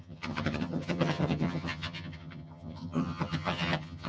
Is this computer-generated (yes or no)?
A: yes